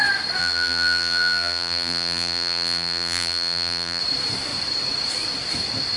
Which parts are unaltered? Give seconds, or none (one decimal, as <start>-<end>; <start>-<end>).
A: 0.0-0.4; 4.0-6.0